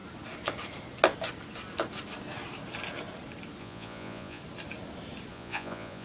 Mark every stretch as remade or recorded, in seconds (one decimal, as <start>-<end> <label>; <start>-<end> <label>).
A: 0.0-3.6 recorded; 3.6-4.4 remade; 4.4-5.3 recorded; 5.3-6.0 remade